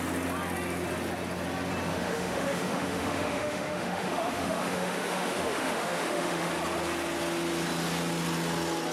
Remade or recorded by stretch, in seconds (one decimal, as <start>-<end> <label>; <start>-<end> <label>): 0.0-1.9 recorded; 1.9-6.5 remade; 6.5-8.9 recorded